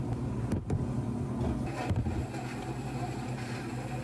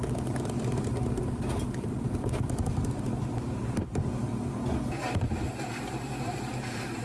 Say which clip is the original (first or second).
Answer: first